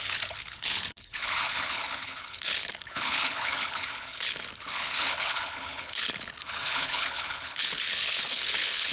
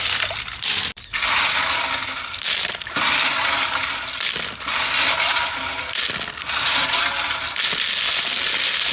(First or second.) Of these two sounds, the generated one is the first